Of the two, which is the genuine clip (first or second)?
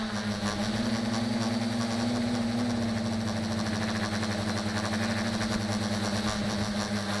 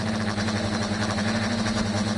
first